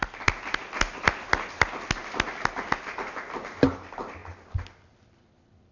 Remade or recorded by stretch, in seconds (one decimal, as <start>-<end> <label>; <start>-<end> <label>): 0.0-5.7 recorded